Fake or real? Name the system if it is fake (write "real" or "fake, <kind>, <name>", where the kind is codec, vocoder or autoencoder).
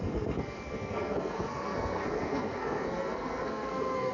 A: fake, codec, SNAC